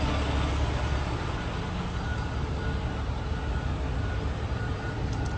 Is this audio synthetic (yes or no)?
no